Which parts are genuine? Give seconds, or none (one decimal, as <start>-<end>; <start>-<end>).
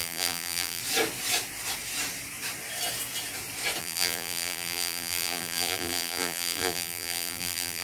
0.8-3.8